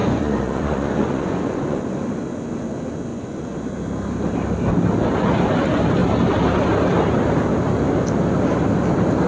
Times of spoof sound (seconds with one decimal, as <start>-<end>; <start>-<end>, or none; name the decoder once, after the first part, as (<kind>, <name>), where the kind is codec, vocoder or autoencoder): 0.0-2.0 (vocoder, Vocos); 3.1-3.6